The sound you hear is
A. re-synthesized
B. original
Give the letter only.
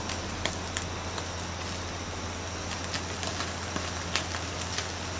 B